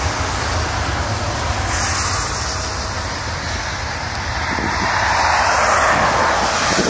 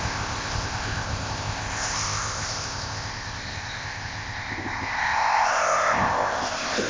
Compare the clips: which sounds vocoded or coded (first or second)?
second